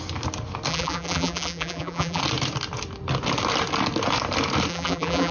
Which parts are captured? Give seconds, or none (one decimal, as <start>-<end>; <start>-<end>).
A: 0.0-0.7; 2.2-4.7